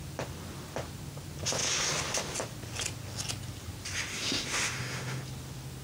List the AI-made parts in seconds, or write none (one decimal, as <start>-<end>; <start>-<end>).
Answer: 4.1-5.2